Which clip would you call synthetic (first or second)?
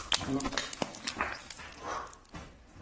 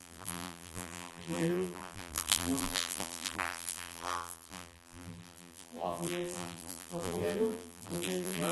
second